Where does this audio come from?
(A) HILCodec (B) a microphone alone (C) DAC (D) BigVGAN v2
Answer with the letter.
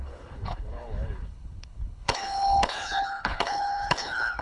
A